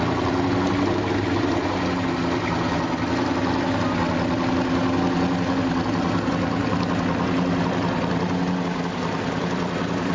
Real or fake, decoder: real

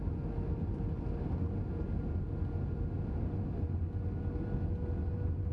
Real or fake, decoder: real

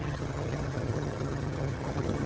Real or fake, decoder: fake, vocoder, HiFi-GAN